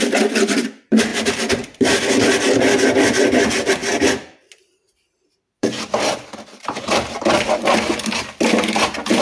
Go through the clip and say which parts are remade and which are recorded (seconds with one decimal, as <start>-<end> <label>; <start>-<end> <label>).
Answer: 0.0-1.1 recorded; 1.1-2.0 remade; 2.0-3.8 recorded; 3.8-7.6 remade; 7.6-9.2 recorded